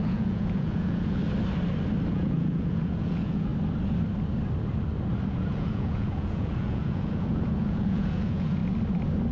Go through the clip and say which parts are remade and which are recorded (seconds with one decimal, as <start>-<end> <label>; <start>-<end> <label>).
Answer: 0.0-1.2 remade; 1.2-2.1 recorded; 2.1-3.5 remade; 3.5-5.3 recorded; 5.3-8.6 remade; 8.6-9.3 recorded